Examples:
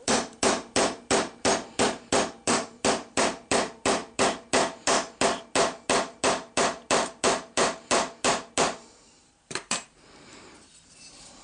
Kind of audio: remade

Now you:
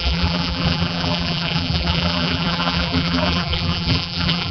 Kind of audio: remade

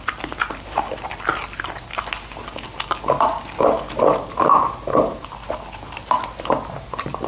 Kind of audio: recorded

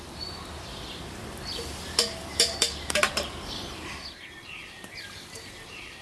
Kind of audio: remade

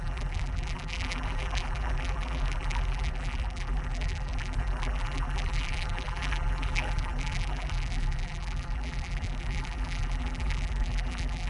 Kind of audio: remade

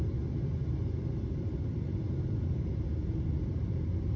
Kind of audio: remade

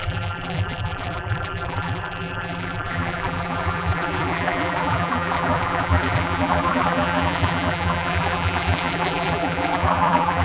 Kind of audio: remade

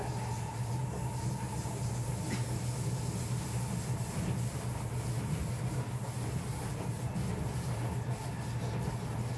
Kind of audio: recorded